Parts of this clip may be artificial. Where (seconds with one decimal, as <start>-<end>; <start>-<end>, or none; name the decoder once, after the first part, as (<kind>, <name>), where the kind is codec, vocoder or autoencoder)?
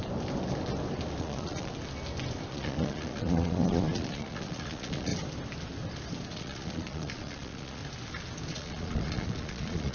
1.2-1.7 (vocoder, Vocos); 2.5-5.1; 6.3-7.8; 8.5-9.9